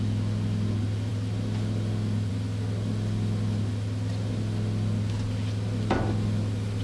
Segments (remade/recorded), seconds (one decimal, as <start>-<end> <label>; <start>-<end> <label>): 0.0-6.8 recorded